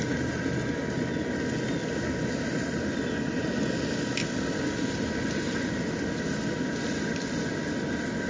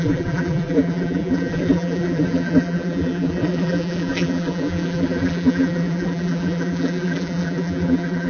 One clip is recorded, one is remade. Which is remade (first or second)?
second